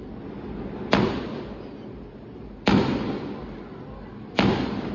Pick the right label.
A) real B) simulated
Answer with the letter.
A